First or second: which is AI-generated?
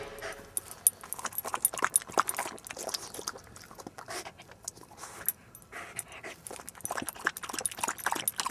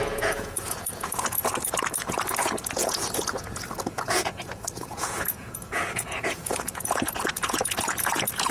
second